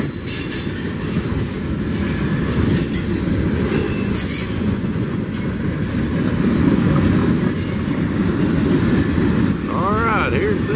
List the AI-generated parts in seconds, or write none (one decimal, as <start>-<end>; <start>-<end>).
3.8-5.2